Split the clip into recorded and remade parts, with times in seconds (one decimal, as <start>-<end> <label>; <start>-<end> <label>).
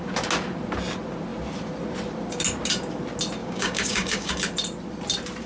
0.0-3.4 recorded; 3.4-4.3 remade; 4.3-5.5 recorded